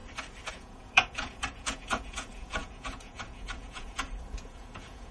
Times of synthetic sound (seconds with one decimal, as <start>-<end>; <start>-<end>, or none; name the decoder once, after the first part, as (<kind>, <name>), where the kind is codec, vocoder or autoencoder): 0.5-5.1 (vocoder, Vocos)

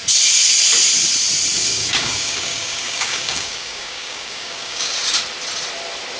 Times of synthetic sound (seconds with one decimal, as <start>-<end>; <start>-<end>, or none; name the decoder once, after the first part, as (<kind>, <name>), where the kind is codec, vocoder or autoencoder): 1.5-4.9 (codec, DAC)